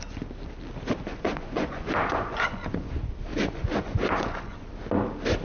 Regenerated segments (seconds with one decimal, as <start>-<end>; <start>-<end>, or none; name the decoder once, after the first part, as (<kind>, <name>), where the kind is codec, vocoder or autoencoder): 1.1-2.9 (vocoder, Vocos); 3.3-4.7